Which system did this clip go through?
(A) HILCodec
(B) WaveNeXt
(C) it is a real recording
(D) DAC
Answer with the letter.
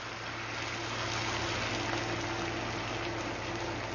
C